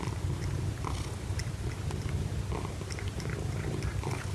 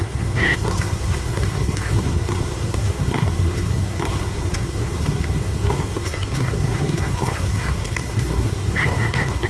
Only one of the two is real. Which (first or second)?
first